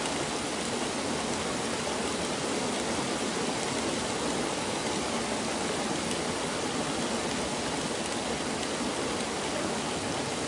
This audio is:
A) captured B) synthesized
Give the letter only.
A